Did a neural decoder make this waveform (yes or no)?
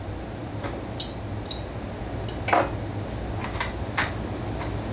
no